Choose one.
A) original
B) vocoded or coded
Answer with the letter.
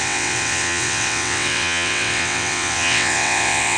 B